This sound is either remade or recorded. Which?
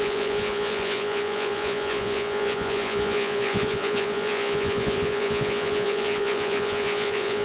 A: remade